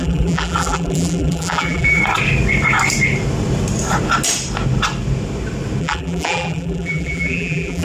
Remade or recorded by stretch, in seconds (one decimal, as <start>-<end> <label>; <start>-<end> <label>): 0.0-2.0 remade; 2.0-5.8 recorded; 5.8-7.8 remade